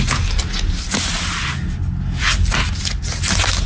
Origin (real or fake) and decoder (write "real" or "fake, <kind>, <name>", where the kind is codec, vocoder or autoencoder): real